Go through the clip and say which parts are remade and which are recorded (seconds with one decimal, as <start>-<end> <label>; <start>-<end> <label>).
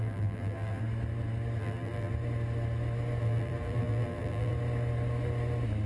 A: 0.0-0.8 remade; 0.8-1.6 recorded; 1.6-2.1 remade; 2.1-3.2 recorded; 3.2-4.5 remade; 4.5-5.9 recorded